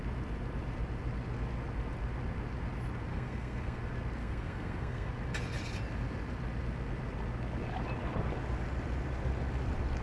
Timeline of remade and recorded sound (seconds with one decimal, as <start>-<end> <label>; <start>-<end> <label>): 0.0-3.1 recorded; 3.1-3.8 remade; 3.8-4.2 recorded; 4.2-5.1 remade; 5.1-10.0 recorded